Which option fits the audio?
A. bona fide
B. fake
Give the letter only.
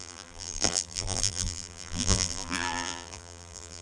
B